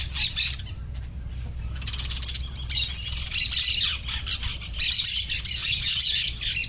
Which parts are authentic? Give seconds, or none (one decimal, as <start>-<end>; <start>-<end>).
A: 0.0-5.6; 6.2-6.7